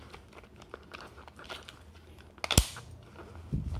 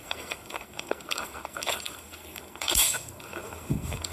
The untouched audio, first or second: first